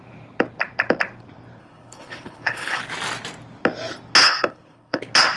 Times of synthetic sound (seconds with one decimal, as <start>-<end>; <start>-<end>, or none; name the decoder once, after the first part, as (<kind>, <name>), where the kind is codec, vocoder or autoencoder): 1.6-2.8 (codec, HILCodec); 4.2-5.0